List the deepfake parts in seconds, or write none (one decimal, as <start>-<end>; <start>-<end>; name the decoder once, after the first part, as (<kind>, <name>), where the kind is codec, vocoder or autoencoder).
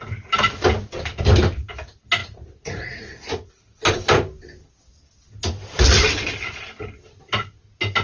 2.2-3.5 (vocoder, Vocos)